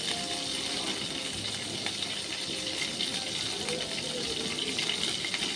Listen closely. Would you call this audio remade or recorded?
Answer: recorded